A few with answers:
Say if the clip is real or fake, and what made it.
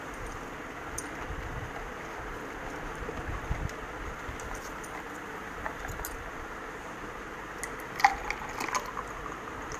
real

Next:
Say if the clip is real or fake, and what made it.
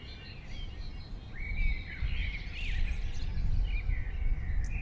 real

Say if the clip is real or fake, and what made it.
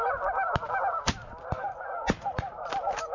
real